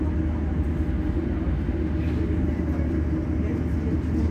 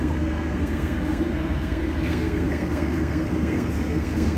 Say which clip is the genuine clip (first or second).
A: first